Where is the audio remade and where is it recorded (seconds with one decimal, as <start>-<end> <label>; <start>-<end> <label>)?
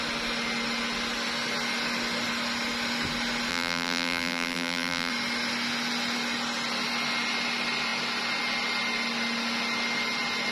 0.0-3.5 recorded; 3.5-5.1 remade; 5.1-10.5 recorded